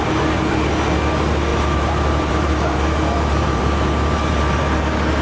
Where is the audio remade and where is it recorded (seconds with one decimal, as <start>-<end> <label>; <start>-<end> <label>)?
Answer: 0.0-1.5 recorded; 1.5-4.6 remade; 4.6-5.2 recorded